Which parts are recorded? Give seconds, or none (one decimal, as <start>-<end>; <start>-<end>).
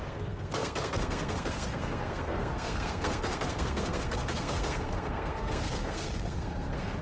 none